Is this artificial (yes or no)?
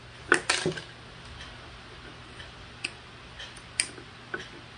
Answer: no